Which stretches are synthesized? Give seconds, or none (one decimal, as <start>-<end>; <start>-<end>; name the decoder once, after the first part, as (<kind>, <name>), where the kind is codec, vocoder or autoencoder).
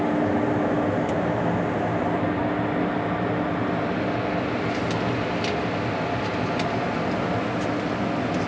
none